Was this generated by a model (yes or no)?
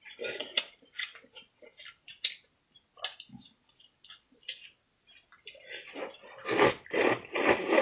no